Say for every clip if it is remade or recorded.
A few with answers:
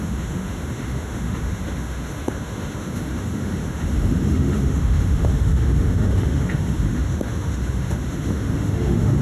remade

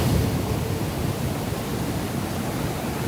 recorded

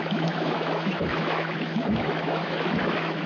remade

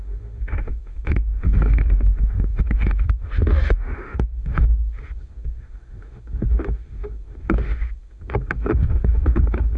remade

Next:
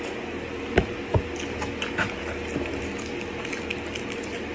recorded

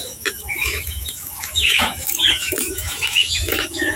remade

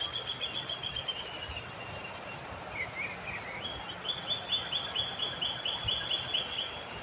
recorded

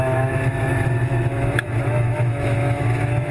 remade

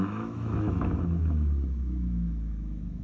remade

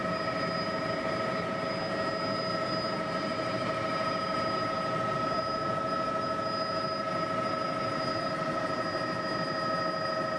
recorded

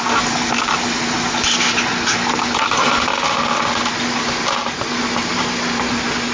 recorded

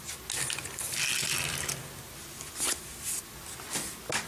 recorded